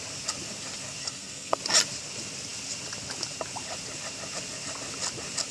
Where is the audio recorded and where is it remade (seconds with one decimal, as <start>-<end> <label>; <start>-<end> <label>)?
0.0-1.0 recorded; 1.0-1.6 remade; 1.6-5.5 recorded